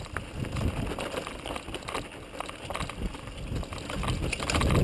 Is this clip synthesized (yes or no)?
no